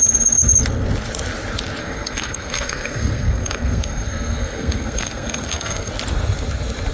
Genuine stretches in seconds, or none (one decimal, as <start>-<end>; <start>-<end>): 0.0-1.8; 5.9-6.9